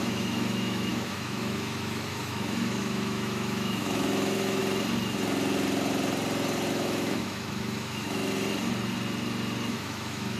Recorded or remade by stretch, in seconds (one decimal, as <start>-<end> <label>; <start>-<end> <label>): 0.0-4.6 remade; 4.6-6.7 recorded; 6.7-8.2 remade; 8.2-9.7 recorded; 9.7-10.4 remade